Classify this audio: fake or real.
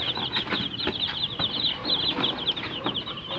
real